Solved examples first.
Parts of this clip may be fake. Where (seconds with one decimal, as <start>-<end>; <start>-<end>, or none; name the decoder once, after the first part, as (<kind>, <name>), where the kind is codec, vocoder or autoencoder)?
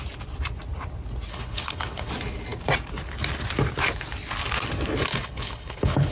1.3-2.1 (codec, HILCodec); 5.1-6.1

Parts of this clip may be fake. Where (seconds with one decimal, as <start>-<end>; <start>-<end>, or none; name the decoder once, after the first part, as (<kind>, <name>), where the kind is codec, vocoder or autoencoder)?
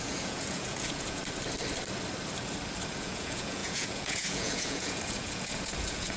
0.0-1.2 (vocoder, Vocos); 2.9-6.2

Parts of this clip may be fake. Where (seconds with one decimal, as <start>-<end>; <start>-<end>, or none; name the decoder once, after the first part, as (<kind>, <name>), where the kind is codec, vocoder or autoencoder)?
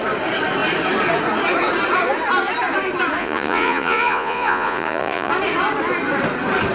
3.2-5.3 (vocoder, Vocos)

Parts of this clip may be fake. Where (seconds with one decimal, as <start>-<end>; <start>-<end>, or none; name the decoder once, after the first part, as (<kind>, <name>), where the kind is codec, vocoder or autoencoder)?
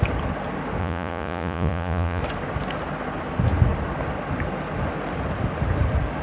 0.8-2.2 (vocoder, Vocos)